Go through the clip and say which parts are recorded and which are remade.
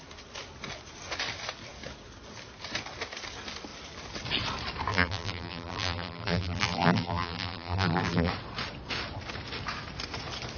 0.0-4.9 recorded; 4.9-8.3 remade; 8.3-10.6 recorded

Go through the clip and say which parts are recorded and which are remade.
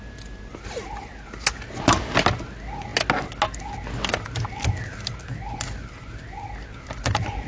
0.0-7.5 recorded